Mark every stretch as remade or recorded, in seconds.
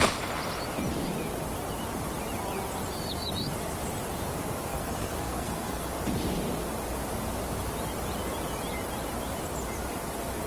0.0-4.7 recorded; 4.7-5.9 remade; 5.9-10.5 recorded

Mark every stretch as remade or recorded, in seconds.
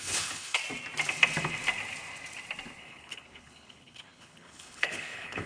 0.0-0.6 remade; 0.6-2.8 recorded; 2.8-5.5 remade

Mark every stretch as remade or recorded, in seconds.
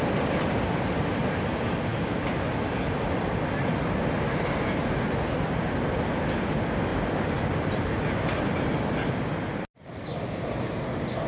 0.0-11.3 recorded